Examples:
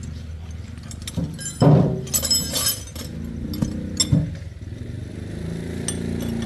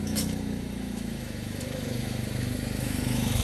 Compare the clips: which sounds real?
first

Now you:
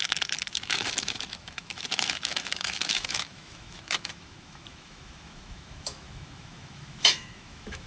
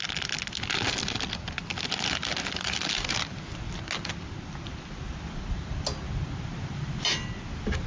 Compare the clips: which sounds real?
second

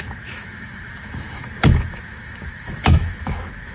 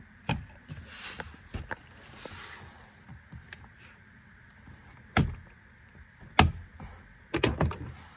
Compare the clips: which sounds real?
second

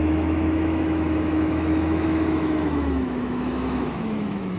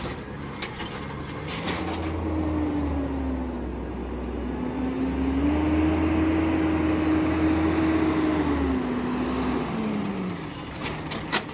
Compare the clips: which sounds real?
second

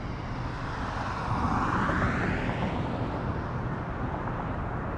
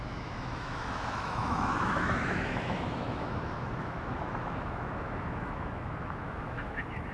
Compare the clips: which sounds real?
first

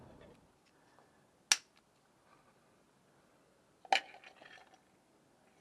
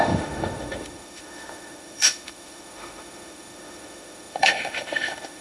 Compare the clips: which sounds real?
first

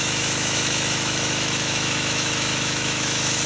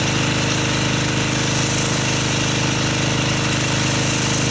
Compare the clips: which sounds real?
second